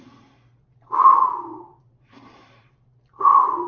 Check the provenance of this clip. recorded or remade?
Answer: remade